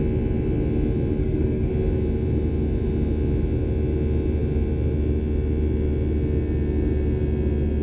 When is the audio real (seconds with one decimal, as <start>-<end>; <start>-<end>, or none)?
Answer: 0.0-1.2; 1.7-7.8